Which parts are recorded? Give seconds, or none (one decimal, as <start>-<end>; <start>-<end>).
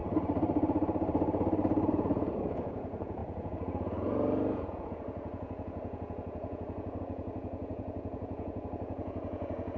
0.0-1.9